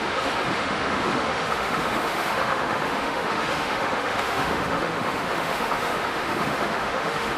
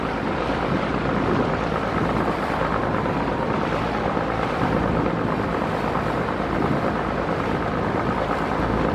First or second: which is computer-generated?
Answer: first